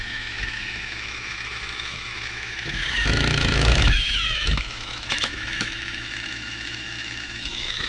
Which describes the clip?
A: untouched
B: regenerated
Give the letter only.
B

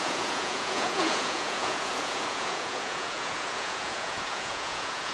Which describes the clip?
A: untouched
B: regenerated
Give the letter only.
B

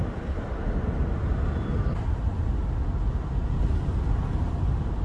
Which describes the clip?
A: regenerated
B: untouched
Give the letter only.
B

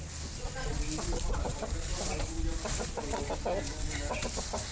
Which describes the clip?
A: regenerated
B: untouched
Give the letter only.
B